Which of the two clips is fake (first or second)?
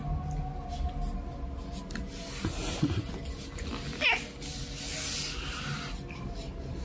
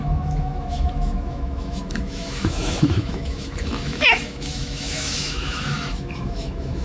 second